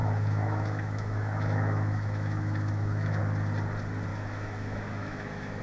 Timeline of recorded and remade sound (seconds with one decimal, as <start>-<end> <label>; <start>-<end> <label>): 0.0-3.2 remade; 3.2-4.1 recorded; 4.1-5.6 remade